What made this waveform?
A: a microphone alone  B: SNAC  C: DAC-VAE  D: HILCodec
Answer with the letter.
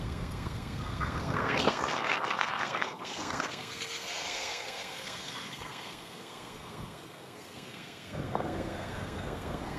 B